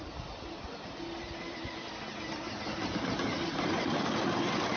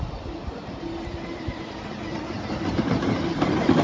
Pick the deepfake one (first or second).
second